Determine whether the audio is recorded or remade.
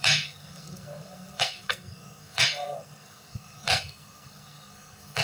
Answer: remade